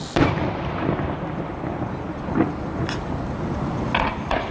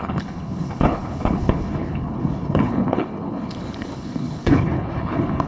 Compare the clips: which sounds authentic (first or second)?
first